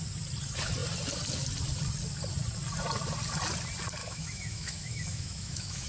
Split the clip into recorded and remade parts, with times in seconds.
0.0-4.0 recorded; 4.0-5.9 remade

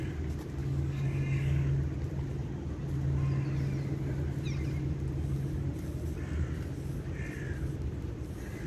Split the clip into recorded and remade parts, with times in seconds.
0.0-0.6 recorded; 0.6-1.7 remade; 1.7-8.7 recorded

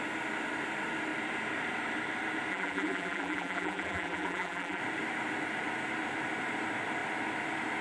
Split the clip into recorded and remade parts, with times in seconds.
0.0-2.5 recorded; 2.5-4.8 remade; 4.8-7.8 recorded

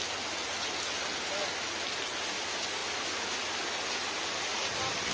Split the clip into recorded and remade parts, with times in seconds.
0.0-5.1 recorded

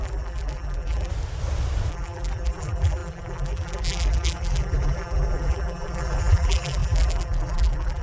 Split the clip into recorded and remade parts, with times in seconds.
0.0-1.1 remade; 1.1-1.9 recorded; 1.9-8.0 remade

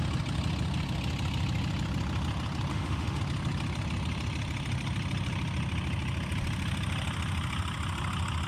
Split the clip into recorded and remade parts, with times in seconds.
0.0-2.7 recorded; 2.7-3.2 remade; 3.2-8.5 recorded

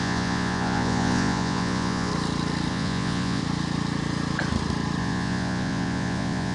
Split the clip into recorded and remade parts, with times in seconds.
0.0-2.1 remade; 2.1-2.7 recorded; 2.7-3.4 remade; 3.4-5.0 recorded; 5.0-6.5 remade

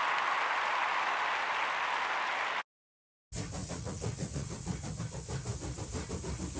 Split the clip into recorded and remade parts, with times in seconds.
0.0-3.6 recorded; 3.6-5.0 remade; 5.0-6.6 recorded